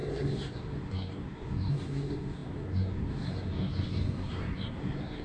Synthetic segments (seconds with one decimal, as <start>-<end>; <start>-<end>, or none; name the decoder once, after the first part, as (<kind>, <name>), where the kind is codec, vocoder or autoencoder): 0.0-5.2 (codec, SNAC)